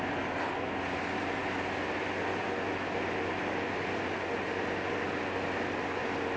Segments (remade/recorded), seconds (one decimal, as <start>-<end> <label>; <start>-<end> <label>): 0.0-6.4 recorded